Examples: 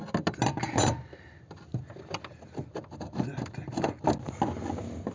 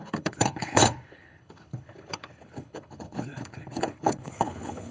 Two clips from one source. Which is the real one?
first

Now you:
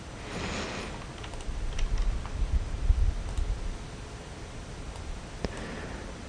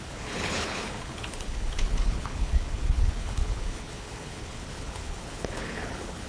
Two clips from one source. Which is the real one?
first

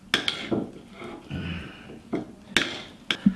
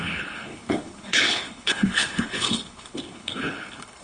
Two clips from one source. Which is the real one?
first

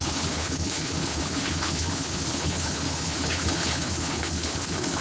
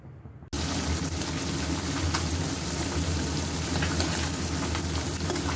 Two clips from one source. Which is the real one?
second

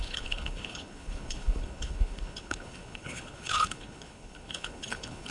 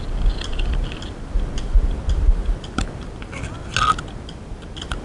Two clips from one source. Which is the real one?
second